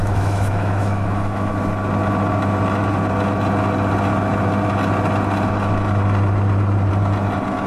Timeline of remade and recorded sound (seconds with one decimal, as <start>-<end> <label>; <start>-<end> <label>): 0.0-1.5 remade; 1.5-7.7 recorded